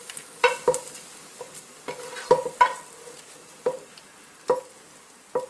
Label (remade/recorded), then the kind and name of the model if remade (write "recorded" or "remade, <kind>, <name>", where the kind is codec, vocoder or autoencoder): recorded